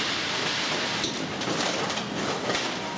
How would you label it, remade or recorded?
recorded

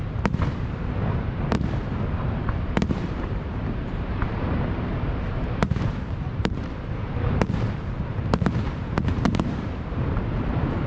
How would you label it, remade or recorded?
remade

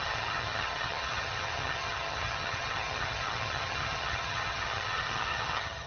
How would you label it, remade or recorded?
remade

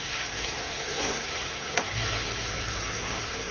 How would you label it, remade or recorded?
remade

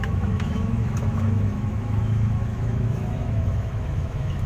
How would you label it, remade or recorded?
remade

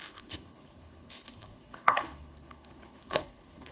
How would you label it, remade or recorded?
remade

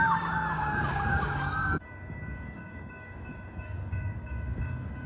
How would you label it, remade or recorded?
remade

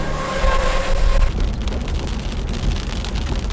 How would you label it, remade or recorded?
recorded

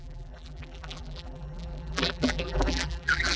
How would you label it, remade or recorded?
remade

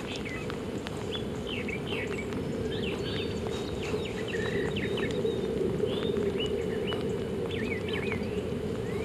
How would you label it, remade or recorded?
recorded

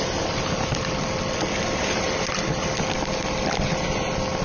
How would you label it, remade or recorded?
recorded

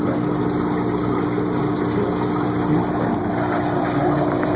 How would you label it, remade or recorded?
recorded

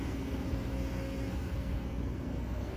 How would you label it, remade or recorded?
remade